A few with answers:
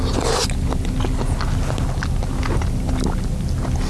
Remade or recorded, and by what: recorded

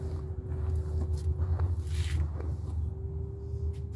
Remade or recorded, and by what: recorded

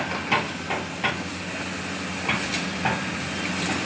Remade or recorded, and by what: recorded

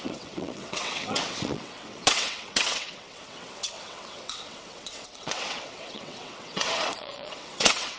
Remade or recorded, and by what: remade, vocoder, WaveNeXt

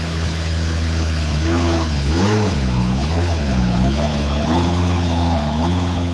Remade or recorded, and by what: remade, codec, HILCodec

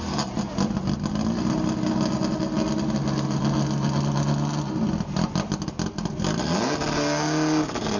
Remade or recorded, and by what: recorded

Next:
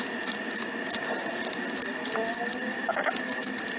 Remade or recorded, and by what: recorded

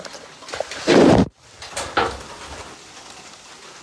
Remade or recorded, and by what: recorded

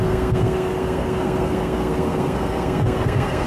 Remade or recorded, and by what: remade, codec, SNAC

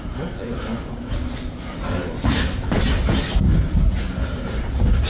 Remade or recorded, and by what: recorded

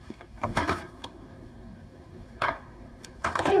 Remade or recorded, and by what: remade, codec, SNAC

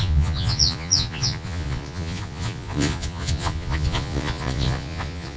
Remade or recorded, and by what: remade, vocoder, Vocos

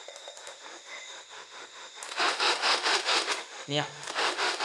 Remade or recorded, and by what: remade, autoencoder, DAC-VAE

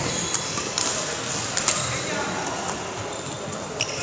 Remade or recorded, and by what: recorded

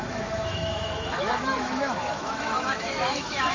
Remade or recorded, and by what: remade, autoencoder, DAC-VAE